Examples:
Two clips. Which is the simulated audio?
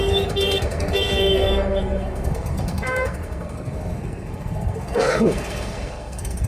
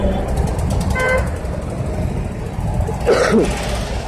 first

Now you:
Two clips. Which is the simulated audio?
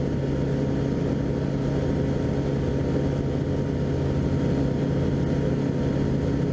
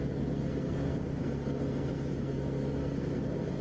second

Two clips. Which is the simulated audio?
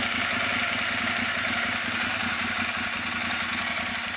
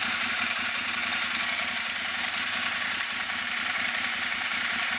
second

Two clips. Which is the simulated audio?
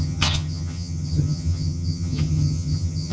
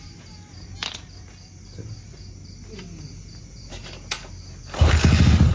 first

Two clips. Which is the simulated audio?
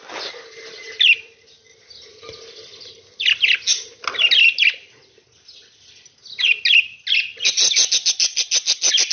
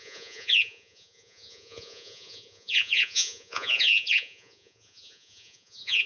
second